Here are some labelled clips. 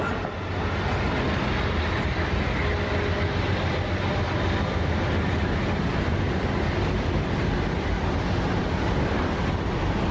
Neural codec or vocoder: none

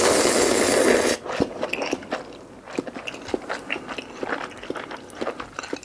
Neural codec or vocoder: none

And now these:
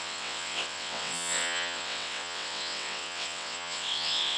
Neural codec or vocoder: vocoder, WaveNeXt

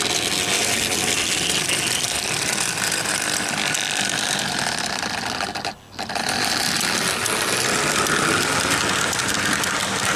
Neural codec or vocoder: none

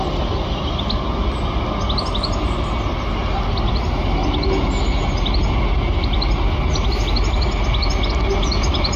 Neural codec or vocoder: none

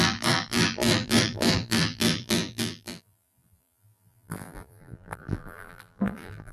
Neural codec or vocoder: vocoder, BigVGAN v2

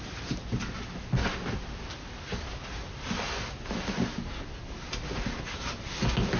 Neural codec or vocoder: none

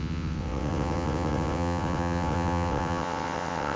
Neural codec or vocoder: vocoder, WaveNeXt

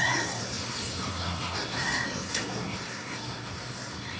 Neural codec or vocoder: codec, SNAC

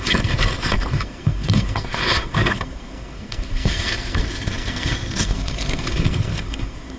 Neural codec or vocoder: codec, SNAC